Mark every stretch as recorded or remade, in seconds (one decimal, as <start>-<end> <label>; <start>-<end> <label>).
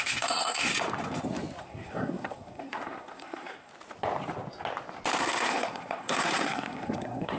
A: 0.0-0.7 remade; 0.7-1.6 recorded; 1.6-3.7 remade; 3.7-5.2 recorded; 5.2-7.4 remade